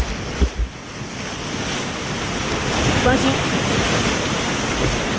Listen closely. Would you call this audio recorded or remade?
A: recorded